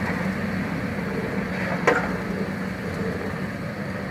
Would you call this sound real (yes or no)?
yes